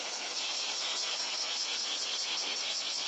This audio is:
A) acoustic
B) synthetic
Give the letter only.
B